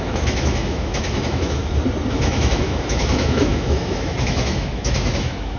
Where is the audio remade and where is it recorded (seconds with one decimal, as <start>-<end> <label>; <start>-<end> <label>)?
0.0-1.6 remade; 1.6-2.1 recorded; 2.1-5.6 remade